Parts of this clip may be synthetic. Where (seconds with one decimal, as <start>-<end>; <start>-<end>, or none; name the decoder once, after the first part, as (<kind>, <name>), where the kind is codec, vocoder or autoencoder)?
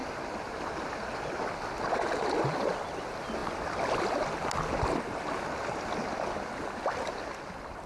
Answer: none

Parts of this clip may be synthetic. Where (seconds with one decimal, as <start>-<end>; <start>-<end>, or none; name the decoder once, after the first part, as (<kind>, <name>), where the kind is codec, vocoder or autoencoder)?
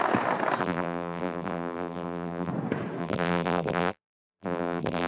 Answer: 0.6-2.5 (vocoder, BigVGAN v2); 3.0-5.1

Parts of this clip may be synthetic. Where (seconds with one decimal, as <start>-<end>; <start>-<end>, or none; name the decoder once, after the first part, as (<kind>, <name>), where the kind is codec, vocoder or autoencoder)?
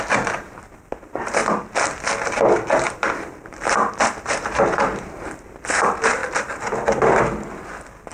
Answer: 0.0-1.4 (vocoder, BigVGAN v2); 2.9-6.2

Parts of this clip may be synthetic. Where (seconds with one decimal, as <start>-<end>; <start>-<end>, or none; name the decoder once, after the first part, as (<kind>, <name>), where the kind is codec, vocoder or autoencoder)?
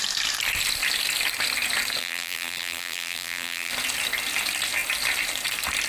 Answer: 2.0-3.7 (vocoder, BigVGAN v2)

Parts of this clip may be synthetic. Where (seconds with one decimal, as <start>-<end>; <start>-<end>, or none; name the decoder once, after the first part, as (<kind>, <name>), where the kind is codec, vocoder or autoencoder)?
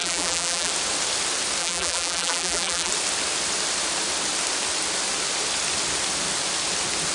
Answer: 0.0-0.7 (vocoder, BigVGAN v2); 1.6-2.9